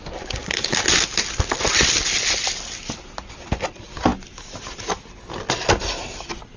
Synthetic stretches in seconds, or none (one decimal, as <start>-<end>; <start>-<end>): none